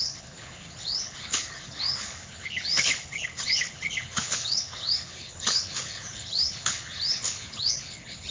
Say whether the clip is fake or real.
fake